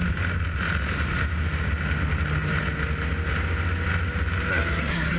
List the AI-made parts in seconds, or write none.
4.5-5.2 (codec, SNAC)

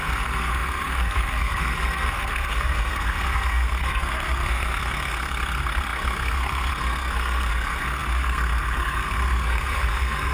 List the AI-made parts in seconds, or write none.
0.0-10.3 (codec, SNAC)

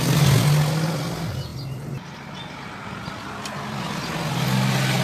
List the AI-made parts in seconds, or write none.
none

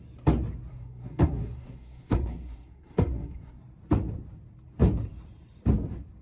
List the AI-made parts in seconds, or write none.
0.7-3.6 (codec, SNAC)

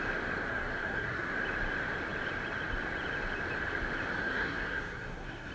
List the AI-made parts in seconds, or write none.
0.5-1.3 (codec, SNAC); 4.2-5.5

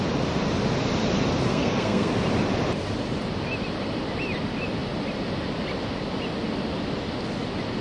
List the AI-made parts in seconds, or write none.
1.5-2.1 (codec, SNAC)

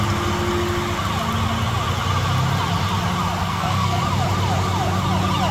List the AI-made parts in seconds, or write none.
3.4-4.0 (codec, SNAC)